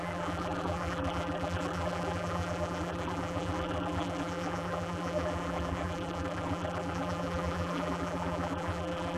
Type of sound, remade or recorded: remade